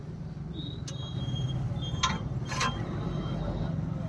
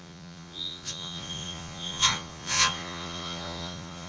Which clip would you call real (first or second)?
first